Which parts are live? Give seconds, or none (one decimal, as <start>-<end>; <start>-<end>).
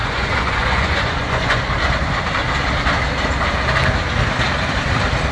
1.6-5.3